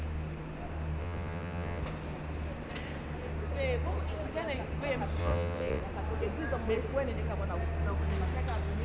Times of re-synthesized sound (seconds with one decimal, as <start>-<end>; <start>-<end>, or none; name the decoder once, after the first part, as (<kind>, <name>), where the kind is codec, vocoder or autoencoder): 1.0-1.8 (vocoder, WaveNeXt); 5.2-5.8